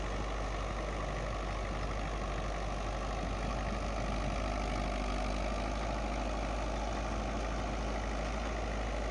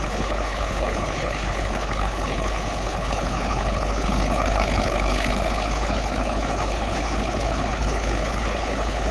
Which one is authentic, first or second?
first